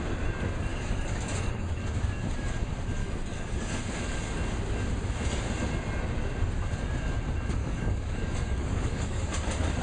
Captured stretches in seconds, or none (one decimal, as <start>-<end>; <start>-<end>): 0.0-0.7; 1.8-3.0; 3.8-7.6; 9.3-9.8